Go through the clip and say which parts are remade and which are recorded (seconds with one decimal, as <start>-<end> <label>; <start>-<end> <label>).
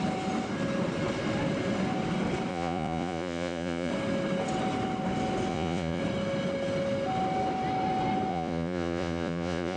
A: 0.0-2.5 recorded; 2.5-3.9 remade; 3.9-5.5 recorded; 5.5-6.0 remade; 6.0-8.3 recorded; 8.3-9.8 remade